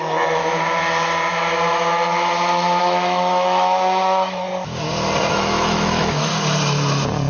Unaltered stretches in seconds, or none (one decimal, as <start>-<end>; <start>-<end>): 0.4-2.8; 4.5-5.3; 6.3-7.3

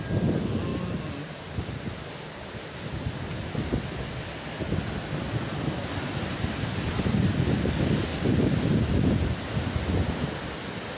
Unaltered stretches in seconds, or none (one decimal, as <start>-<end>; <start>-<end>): 0.0-11.0

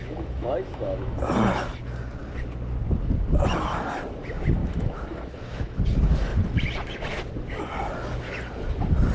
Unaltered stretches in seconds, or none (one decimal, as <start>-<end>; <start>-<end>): 1.2-4.6; 5.8-9.1

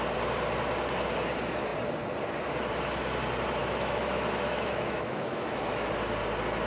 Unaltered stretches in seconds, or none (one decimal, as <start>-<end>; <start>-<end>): 0.0-3.6; 5.9-6.7

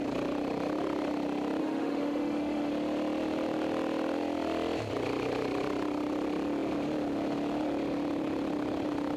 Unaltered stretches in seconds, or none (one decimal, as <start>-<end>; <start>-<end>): 0.0-1.6; 2.7-9.2